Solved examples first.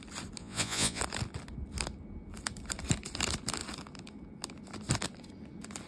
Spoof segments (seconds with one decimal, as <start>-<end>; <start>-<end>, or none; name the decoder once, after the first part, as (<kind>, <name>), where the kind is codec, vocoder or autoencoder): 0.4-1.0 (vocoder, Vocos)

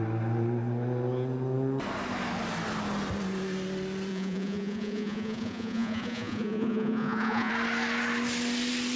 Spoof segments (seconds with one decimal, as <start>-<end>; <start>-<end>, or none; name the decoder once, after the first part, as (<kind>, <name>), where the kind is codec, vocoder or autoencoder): 4.1-7.5 (vocoder, Vocos)

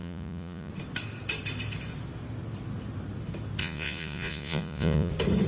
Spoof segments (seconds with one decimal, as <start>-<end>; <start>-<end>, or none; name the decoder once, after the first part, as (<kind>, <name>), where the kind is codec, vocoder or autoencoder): 0.0-0.7 (vocoder, Vocos); 3.6-5.1